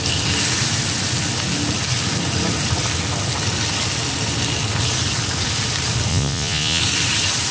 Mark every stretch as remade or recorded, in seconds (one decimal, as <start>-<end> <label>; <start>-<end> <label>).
0.0-6.1 recorded; 6.1-6.8 remade; 6.8-7.5 recorded